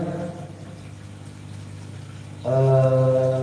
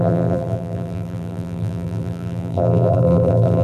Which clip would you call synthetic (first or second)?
second